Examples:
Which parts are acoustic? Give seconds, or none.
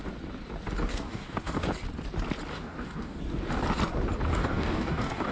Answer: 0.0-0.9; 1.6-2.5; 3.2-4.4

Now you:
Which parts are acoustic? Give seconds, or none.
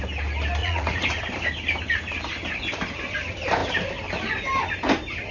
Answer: 0.0-0.6; 1.2-5.3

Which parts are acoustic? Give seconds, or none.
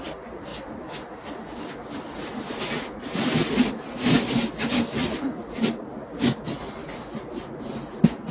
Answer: 0.0-8.3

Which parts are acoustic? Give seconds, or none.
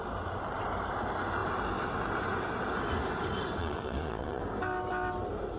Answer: 0.0-3.6; 4.4-5.6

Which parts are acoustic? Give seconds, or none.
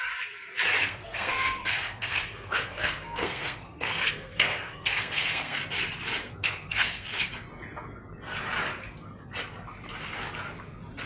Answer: 0.0-0.8; 5.6-6.2; 7.3-11.1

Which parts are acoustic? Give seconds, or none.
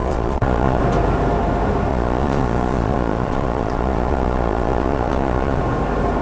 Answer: 0.8-1.9; 5.6-6.2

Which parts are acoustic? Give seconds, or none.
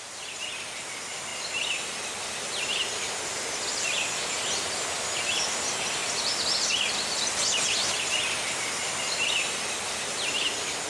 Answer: 0.0-10.9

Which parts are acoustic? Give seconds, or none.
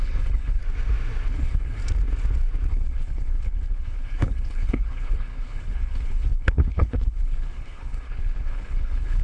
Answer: 0.6-1.3; 1.8-2.7